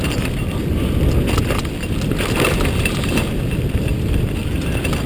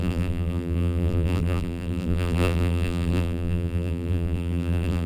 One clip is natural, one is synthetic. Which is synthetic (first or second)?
second